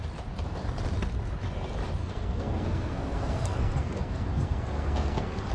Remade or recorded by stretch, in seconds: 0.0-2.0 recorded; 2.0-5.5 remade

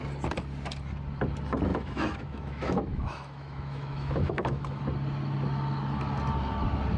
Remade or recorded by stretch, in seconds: 0.0-1.7 recorded; 1.7-4.8 remade; 4.8-7.0 recorded

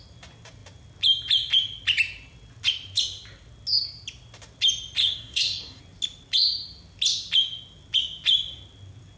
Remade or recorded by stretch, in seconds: 0.0-5.0 recorded; 5.0-5.8 remade; 5.8-9.2 recorded

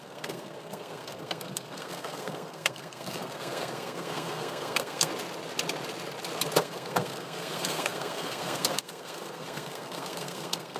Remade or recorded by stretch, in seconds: 0.0-5.1 remade; 5.1-6.6 recorded; 6.6-10.8 remade

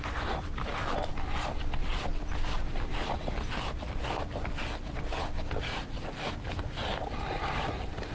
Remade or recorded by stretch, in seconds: 0.0-5.7 recorded; 5.7-6.3 remade; 6.3-8.1 recorded

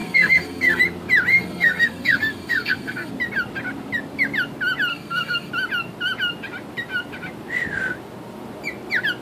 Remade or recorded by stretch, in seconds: 0.0-0.8 remade; 0.8-1.3 recorded; 1.3-3.1 remade; 3.1-4.9 recorded; 4.9-5.5 remade; 5.5-9.2 recorded